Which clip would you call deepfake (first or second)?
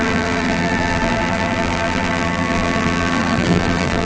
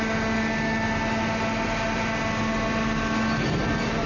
first